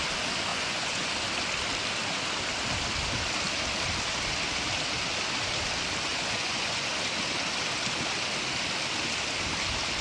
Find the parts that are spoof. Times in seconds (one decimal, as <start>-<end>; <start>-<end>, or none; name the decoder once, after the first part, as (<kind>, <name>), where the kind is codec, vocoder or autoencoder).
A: 0.5-1.1 (vocoder, Vocos); 6.1-6.9

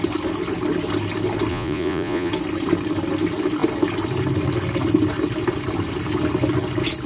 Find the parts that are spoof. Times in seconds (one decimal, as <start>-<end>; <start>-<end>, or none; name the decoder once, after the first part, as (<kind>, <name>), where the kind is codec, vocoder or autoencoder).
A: 1.5-2.3 (vocoder, Vocos)

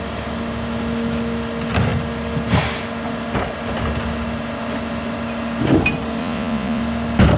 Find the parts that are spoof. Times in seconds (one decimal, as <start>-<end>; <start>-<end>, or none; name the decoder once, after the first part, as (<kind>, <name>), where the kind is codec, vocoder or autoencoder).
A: 6.2-6.8 (vocoder, Vocos)

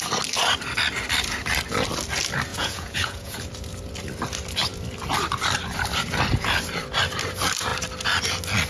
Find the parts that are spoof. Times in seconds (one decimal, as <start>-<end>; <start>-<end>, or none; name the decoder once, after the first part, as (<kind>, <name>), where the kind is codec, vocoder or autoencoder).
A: 2.5-3.4 (vocoder, Vocos)

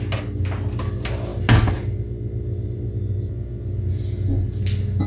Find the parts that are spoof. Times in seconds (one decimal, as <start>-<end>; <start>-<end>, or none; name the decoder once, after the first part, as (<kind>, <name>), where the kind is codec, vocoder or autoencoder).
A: none